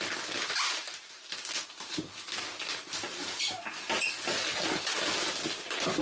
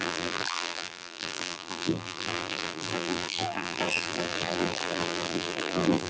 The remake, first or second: second